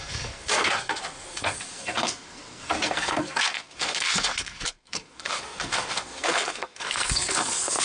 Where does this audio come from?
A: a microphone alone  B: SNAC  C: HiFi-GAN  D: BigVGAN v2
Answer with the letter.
B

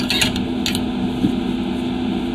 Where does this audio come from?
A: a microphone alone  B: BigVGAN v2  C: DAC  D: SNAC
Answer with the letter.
A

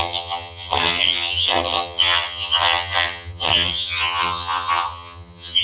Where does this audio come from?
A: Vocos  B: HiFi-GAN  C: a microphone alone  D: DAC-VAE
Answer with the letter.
B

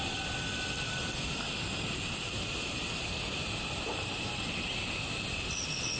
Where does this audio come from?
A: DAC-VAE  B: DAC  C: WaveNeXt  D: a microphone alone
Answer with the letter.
D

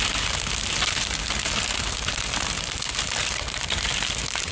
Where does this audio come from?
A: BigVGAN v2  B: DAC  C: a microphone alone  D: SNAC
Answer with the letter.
C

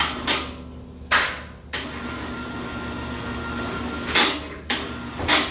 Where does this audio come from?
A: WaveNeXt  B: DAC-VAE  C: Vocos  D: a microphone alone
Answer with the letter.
D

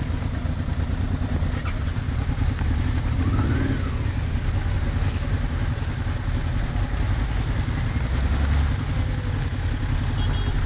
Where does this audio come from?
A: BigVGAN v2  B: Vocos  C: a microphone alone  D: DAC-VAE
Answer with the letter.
C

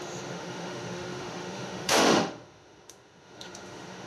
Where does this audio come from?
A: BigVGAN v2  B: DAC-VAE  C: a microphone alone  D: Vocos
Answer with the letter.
B